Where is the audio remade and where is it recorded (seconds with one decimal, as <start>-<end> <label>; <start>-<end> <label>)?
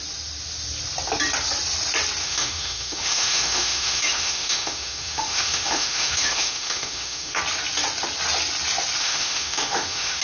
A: 0.0-2.2 recorded; 2.2-7.4 remade; 7.4-9.0 recorded; 9.0-10.2 remade